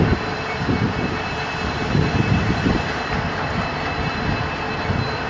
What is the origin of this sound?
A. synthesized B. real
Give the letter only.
B